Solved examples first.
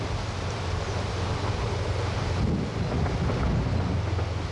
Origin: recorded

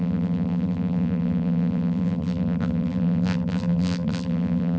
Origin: remade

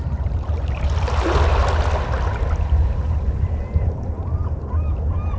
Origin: recorded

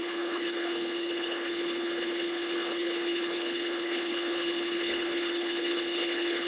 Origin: remade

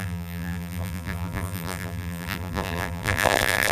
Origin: remade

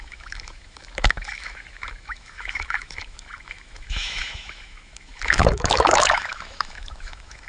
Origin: remade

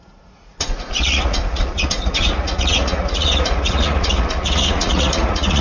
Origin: remade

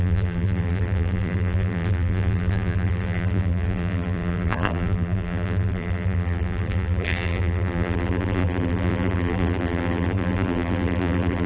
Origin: remade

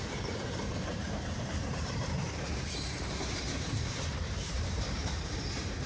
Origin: remade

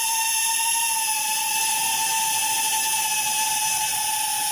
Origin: remade